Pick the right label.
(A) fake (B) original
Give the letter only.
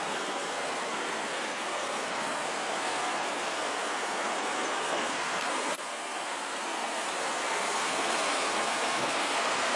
A